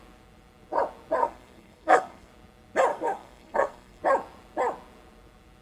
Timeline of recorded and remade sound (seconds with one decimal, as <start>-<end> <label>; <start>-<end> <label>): 0.0-1.2 recorded; 1.2-2.3 remade; 2.3-2.9 recorded; 2.9-4.0 remade; 4.0-5.6 recorded